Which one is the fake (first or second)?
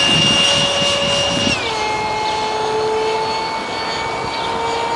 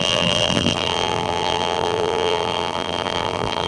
second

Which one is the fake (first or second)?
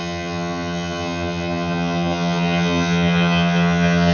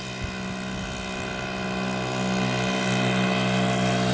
first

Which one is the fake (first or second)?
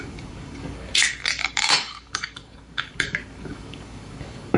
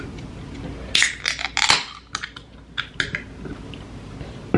first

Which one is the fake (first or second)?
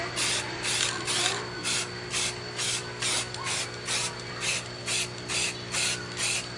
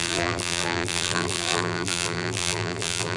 second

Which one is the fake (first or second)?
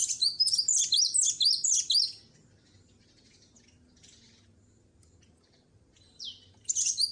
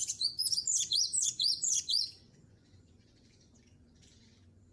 second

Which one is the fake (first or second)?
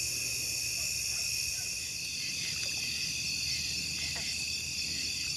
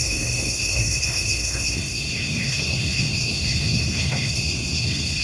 second